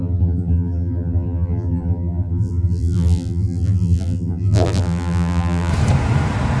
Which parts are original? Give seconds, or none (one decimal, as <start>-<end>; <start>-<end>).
5.7-6.6